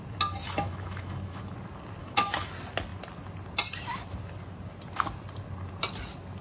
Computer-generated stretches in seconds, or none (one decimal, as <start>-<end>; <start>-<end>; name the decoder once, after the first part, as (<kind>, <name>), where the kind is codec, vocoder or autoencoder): 0.4-1.4 (autoencoder, DAC-VAE); 2.0-2.5